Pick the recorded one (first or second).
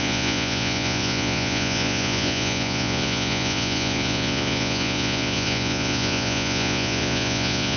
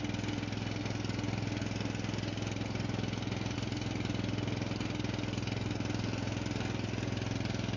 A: second